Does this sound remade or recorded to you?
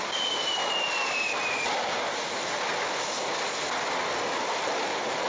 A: recorded